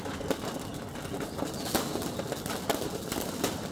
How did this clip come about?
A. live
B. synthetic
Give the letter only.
A